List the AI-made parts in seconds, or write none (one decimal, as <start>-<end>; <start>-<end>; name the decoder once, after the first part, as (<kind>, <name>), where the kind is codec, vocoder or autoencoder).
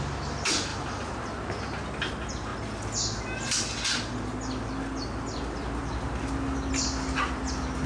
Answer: none